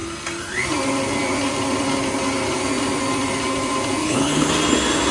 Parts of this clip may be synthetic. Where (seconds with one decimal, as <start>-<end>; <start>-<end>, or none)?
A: 4.0-4.5